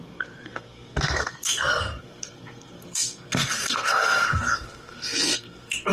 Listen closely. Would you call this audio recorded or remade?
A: remade